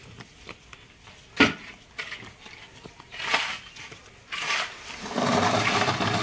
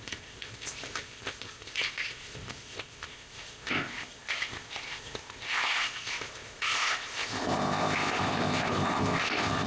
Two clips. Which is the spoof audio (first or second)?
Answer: second